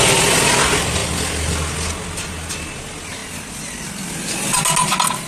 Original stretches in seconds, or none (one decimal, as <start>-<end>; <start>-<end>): 0.0-5.3